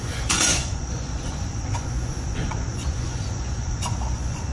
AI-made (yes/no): yes